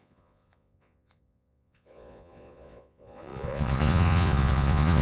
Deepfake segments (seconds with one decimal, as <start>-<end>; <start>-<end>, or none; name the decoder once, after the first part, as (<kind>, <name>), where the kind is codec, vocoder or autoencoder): 0.0-5.0 (vocoder, Vocos)

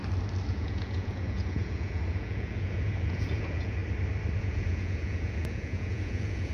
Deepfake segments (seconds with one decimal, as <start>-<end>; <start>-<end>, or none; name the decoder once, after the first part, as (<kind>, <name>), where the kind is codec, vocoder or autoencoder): 0.5-3.8 (vocoder, Vocos); 4.4-6.5

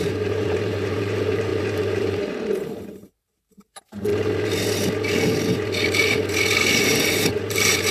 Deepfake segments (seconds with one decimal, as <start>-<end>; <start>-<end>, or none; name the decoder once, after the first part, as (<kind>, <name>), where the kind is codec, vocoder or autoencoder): 0.0-4.1 (vocoder, BigVGAN v2); 6.7-7.9

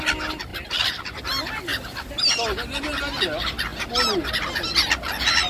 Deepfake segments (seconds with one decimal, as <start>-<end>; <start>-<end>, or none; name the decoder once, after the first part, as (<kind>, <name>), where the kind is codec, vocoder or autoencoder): 0.5-1.2 (vocoder, BigVGAN v2); 1.7-2.2

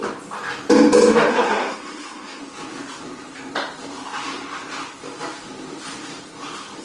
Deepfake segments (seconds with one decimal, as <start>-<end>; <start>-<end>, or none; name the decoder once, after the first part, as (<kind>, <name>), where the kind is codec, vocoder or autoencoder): 1.3-2.4 (codec, SNAC)

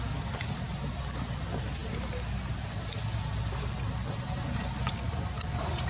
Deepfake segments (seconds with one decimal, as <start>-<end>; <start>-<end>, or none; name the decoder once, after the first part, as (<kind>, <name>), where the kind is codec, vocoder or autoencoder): 1.8-2.5 (vocoder, BigVGAN v2)